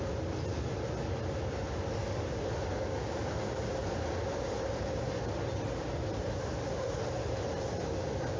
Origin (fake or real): real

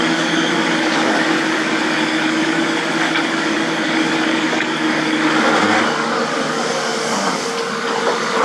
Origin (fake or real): fake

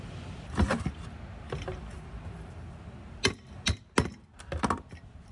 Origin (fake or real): real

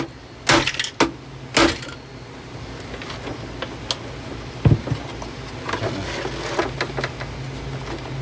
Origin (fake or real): real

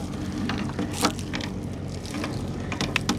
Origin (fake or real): real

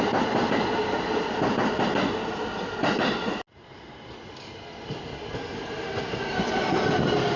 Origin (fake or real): real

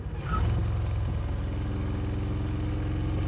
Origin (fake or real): real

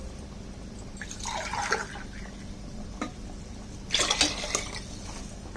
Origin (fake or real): real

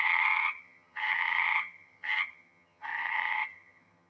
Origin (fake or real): fake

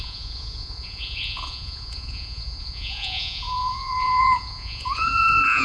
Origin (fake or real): fake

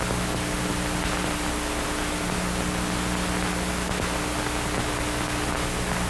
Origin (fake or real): real